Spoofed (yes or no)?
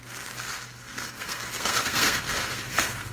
yes